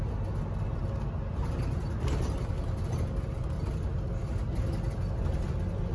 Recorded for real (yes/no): yes